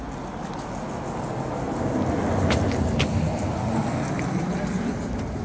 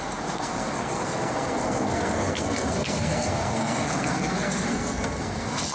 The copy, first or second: second